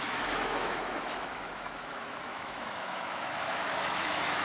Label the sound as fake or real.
fake